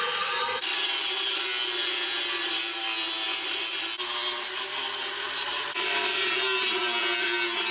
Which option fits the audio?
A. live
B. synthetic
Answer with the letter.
A